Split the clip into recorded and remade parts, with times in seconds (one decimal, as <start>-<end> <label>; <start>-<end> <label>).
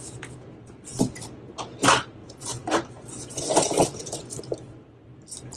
0.0-2.2 recorded; 2.2-4.4 remade; 4.4-5.6 recorded